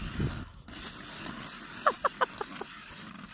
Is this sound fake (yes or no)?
no